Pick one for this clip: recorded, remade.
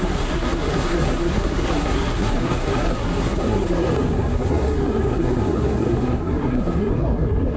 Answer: remade